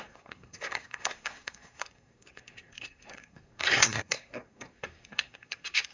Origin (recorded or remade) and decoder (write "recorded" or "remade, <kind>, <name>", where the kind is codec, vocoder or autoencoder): remade, codec, SNAC